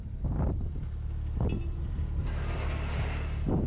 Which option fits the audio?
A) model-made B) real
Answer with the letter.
B